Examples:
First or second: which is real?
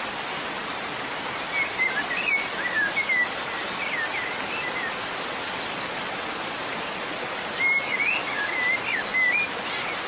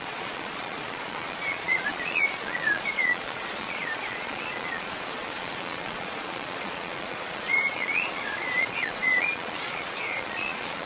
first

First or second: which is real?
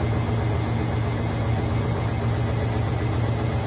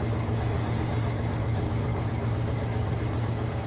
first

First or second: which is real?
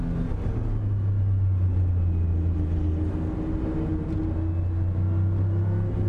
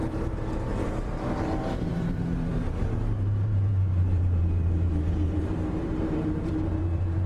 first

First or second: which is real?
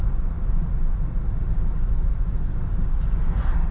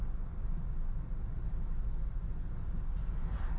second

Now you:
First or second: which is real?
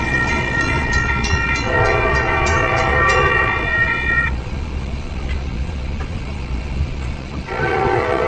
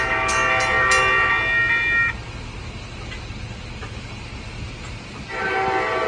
second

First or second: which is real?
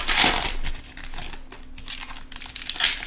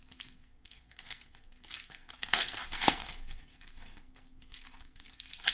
first